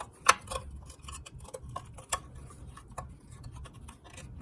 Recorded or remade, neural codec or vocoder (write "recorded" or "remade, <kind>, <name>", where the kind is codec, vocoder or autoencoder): recorded